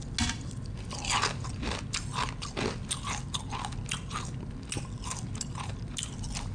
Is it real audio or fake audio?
real